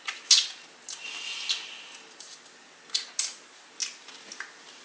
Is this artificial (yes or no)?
no